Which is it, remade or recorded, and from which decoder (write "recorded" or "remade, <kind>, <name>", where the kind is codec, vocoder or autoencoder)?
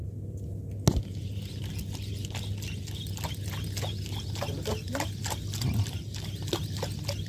recorded